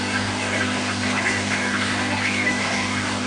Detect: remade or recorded remade